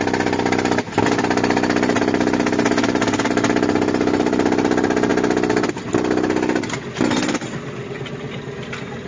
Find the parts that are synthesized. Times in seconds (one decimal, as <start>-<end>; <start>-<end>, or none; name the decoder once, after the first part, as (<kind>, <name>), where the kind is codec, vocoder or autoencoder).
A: none